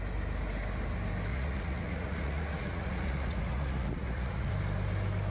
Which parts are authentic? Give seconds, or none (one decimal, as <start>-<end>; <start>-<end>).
0.0-1.3; 4.5-5.3

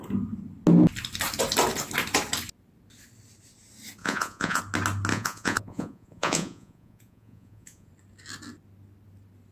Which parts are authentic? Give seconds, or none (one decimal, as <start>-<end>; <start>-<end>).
0.0-4.0; 4.6-5.1; 7.9-9.5

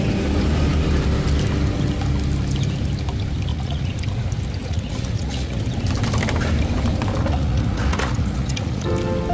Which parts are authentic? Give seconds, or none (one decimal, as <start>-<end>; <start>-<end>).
0.0-3.5; 4.0-4.6; 5.6-7.3; 8.9-9.3

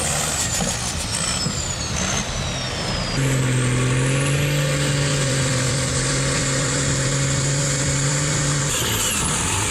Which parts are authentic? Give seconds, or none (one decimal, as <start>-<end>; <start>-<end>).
0.0-5.1; 8.8-9.7

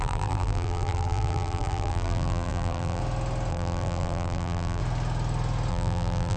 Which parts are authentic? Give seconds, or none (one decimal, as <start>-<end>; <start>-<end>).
3.0-3.5; 4.8-5.7

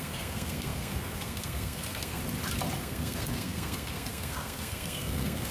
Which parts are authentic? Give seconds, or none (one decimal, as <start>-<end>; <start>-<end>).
2.2-2.8

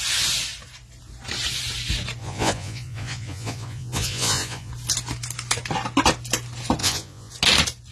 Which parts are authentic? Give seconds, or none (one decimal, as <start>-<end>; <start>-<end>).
0.0-2.2; 4.7-6.8; 7.3-7.9

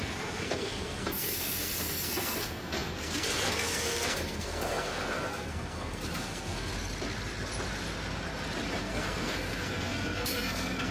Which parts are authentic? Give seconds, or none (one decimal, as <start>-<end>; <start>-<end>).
6.7-8.8